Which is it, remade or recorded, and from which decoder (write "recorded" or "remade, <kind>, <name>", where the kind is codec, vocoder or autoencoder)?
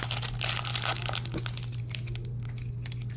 recorded